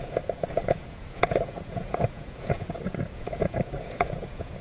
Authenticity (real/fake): fake